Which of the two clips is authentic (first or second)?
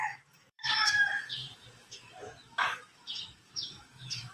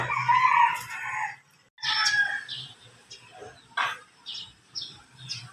second